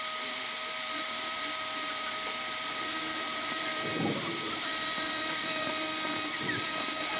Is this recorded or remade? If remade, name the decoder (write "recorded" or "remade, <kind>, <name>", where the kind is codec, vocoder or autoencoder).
remade, vocoder, BigVGAN v2